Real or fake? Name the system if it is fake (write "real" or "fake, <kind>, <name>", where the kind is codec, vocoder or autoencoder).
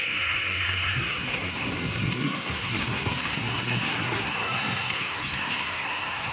fake, codec, SNAC